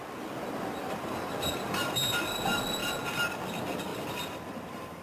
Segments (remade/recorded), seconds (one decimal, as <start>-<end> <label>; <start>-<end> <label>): 0.0-0.8 recorded; 0.8-1.4 remade; 1.4-3.9 recorded; 3.9-5.0 remade